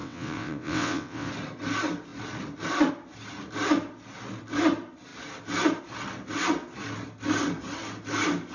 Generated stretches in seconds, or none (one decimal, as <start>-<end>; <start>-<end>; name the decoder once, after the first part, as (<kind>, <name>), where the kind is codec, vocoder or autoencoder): 0.0-1.3 (vocoder, WaveNeXt)